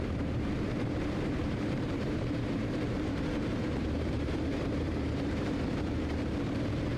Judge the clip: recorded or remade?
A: remade